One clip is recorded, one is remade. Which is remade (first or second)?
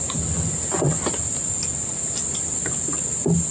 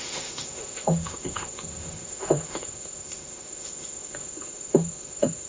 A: second